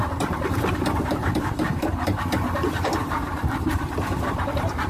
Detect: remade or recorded remade